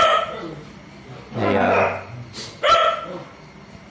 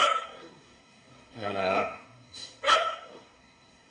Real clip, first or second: first